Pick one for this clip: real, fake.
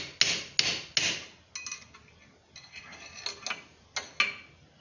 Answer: real